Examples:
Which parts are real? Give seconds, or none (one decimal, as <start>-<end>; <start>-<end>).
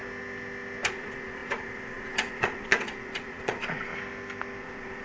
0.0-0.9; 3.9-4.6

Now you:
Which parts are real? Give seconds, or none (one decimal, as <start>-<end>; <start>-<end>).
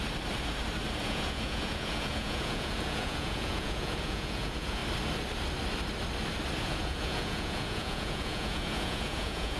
0.0-1.0; 4.8-6.6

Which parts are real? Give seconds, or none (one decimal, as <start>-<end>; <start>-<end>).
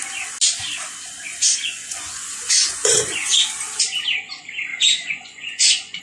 0.0-1.3; 3.3-4.7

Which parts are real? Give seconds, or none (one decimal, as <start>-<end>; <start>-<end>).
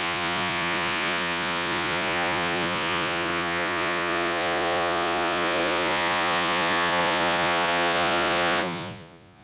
none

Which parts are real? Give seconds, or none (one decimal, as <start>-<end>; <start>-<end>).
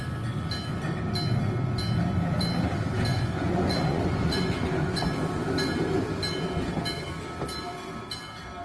0.0-3.1; 5.0-8.6